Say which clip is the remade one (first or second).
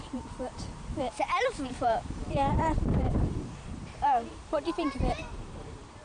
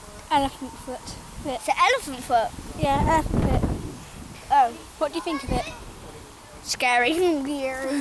first